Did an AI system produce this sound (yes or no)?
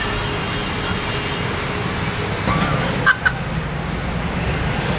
no